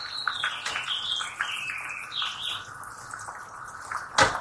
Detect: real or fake real